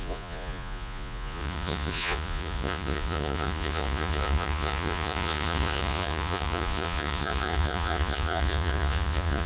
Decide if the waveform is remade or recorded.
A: remade